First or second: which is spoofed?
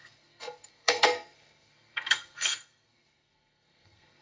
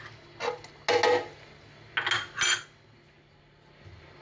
first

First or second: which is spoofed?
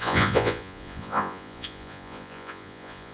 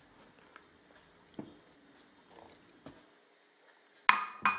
first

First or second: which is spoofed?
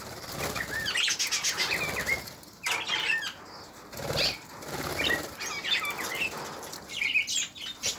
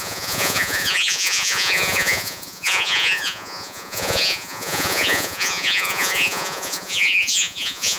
second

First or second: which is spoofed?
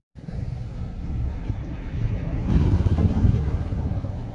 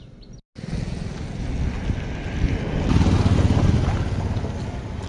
first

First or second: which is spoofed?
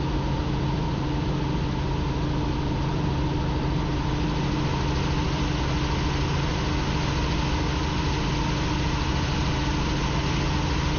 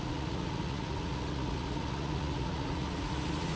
second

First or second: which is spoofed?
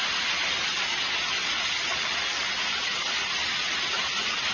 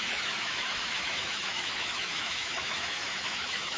second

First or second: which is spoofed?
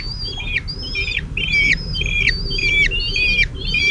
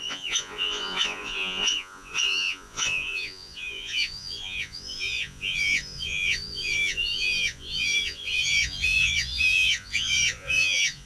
second